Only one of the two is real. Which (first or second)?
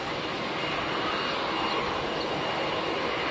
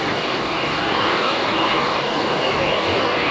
first